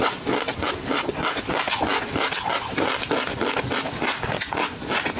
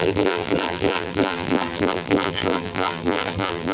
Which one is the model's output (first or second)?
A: second